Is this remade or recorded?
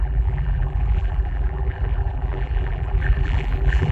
remade